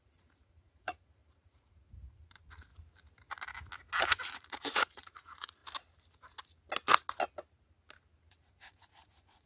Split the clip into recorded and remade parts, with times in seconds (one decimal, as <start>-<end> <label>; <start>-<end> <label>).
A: 0.0-2.7 remade; 2.7-4.0 recorded; 4.0-5.6 remade; 5.6-8.2 recorded; 8.2-9.5 remade